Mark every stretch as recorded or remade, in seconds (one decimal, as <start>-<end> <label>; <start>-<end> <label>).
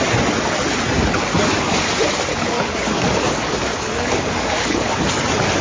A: 0.0-2.3 recorded; 2.3-4.9 remade; 4.9-5.6 recorded